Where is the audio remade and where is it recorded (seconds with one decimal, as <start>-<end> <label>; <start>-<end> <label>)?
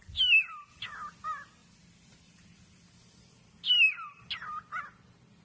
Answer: 0.0-5.4 recorded